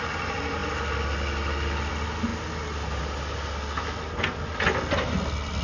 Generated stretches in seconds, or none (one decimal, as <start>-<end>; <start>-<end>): none